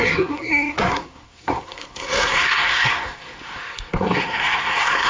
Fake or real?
fake